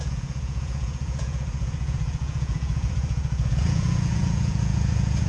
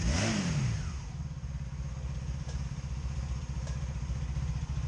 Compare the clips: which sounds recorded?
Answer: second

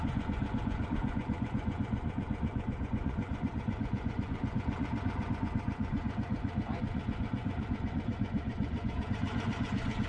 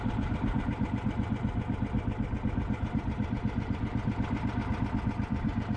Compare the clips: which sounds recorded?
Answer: second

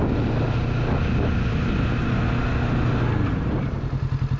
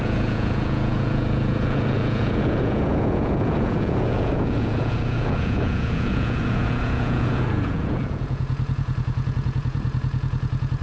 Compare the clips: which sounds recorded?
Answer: first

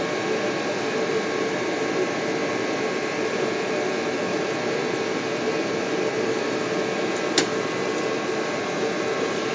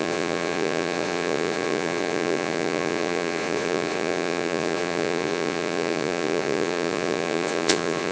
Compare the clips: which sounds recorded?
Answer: first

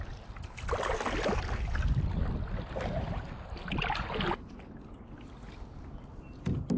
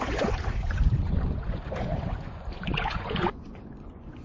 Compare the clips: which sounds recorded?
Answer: first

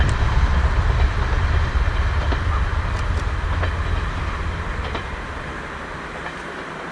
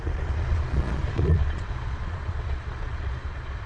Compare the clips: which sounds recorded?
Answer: first